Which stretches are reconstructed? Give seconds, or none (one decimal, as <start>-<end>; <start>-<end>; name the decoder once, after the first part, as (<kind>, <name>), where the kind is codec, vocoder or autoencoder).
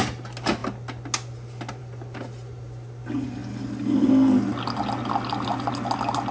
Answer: none